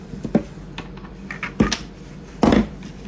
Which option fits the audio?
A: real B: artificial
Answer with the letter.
B